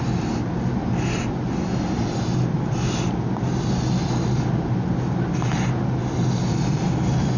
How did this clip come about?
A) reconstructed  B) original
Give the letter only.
B